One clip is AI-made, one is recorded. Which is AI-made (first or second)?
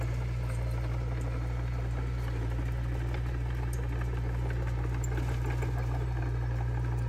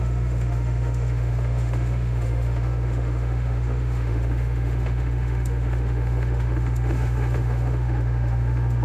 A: second